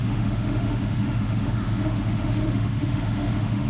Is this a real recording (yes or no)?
no